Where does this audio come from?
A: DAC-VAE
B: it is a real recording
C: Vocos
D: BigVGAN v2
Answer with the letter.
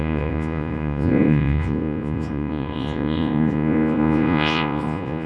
C